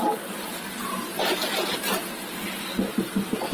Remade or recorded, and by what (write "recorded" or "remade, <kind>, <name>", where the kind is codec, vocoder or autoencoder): recorded